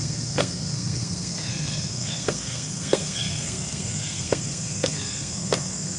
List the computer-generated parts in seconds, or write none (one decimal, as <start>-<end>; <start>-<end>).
0.0-6.0